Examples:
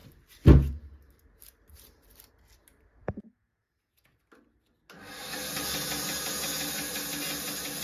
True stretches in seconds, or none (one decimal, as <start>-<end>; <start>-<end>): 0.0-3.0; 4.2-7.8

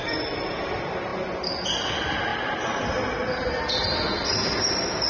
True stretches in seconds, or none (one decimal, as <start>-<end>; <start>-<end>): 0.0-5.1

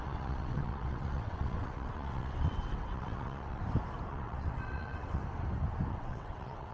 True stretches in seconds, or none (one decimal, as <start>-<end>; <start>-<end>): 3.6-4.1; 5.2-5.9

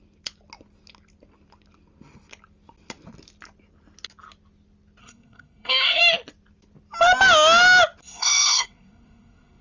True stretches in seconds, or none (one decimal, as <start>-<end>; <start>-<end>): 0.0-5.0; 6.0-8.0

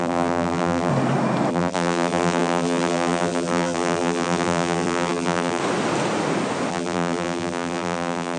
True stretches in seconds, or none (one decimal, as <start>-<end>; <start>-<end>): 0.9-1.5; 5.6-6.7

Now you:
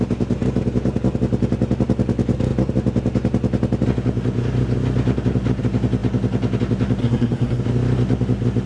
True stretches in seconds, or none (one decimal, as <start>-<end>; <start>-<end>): 0.0-7.0; 7.6-8.7

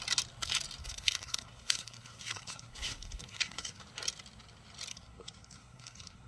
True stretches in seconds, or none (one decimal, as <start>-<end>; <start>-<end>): 0.0-0.8; 3.8-4.9